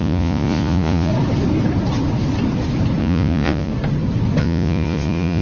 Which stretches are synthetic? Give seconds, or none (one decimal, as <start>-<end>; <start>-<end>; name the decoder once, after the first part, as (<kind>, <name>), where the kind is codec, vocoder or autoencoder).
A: 0.0-1.1 (vocoder, Vocos); 3.0-3.7; 4.4-5.4